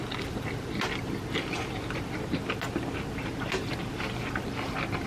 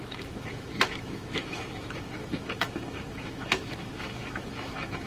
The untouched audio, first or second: first